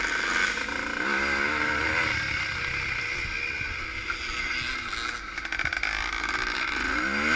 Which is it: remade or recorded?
recorded